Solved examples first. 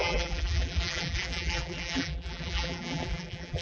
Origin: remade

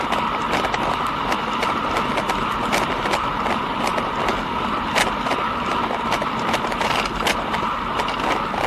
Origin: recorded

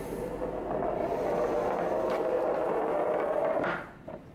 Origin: recorded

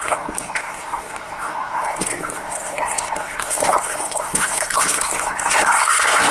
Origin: remade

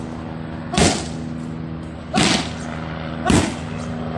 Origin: recorded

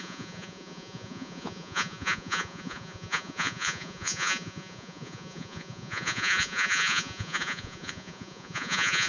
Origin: remade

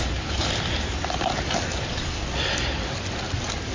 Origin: recorded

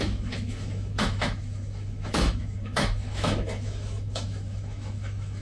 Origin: remade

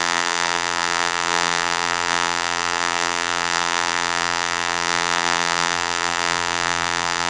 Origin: remade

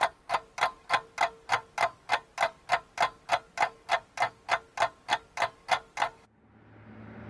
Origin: recorded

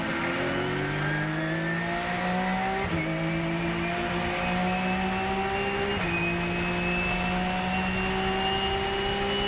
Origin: recorded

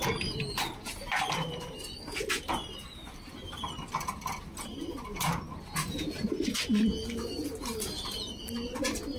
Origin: recorded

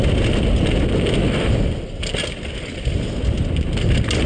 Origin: recorded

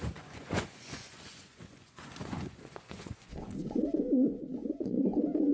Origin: remade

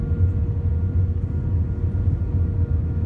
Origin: recorded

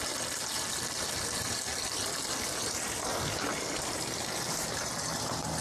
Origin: recorded